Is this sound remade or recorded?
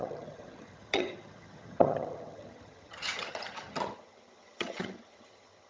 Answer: remade